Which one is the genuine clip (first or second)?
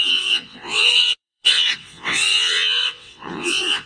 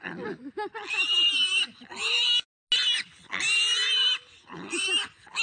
second